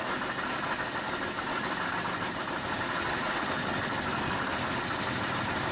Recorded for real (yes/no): yes